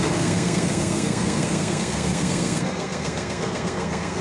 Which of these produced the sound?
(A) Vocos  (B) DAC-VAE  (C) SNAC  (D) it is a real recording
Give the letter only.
C